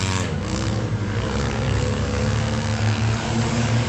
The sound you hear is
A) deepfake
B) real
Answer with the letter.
A